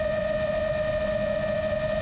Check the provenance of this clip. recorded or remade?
recorded